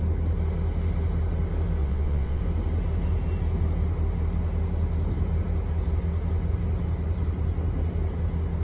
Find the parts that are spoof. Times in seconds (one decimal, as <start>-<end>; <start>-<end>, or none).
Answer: 1.8-2.4